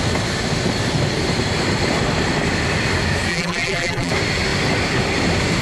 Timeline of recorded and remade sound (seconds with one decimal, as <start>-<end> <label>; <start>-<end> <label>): 0.0-3.3 recorded; 3.3-4.1 remade; 4.1-5.6 recorded